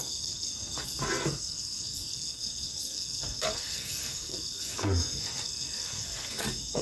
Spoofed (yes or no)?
yes